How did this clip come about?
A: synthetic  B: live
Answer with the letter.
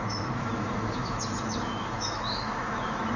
A